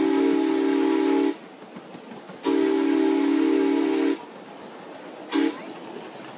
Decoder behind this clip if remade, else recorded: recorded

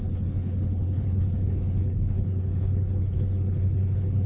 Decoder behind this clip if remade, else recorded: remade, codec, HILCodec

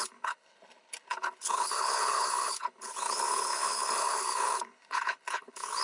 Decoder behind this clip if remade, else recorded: remade, codec, HILCodec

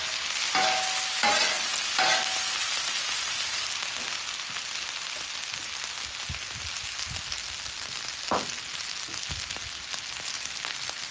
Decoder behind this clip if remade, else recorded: recorded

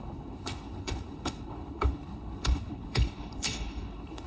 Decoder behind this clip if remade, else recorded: remade, codec, HILCodec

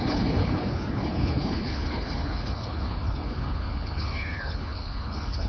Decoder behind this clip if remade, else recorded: remade, codec, HILCodec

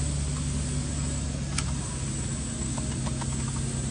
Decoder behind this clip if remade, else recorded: recorded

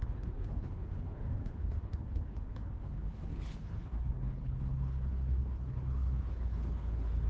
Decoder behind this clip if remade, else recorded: remade, codec, HILCodec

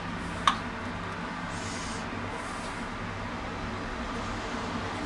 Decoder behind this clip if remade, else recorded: recorded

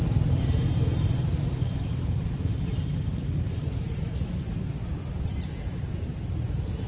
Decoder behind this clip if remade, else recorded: recorded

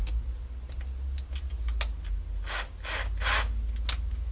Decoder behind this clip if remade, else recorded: recorded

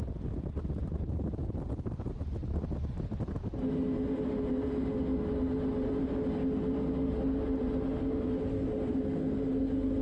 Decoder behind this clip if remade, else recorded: recorded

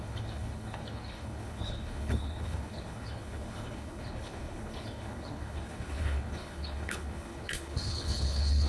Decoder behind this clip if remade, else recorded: remade, codec, HILCodec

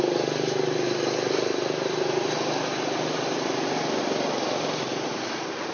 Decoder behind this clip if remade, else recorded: recorded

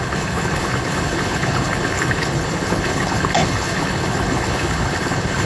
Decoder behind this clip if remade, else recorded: remade, codec, HILCodec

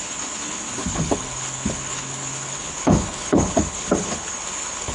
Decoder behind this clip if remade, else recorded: remade, codec, HILCodec